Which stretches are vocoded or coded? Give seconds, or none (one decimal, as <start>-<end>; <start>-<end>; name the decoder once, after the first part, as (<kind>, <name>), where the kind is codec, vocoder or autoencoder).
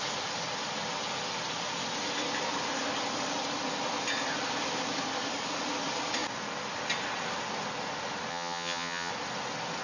8.3-9.1 (vocoder, HiFi-GAN)